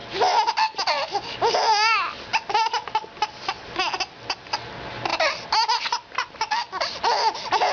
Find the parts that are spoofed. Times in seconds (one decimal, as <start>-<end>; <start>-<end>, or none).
none